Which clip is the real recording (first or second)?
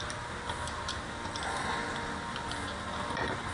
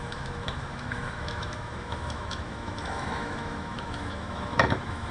first